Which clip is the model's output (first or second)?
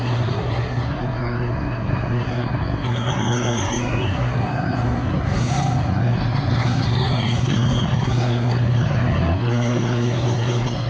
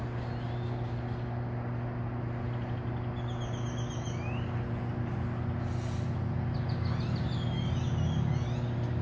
first